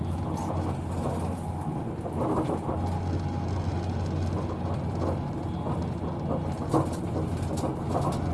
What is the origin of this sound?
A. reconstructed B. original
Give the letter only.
B